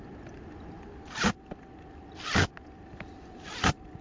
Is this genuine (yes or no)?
yes